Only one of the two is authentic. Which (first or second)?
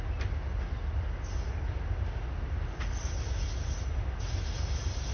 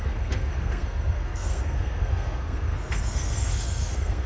first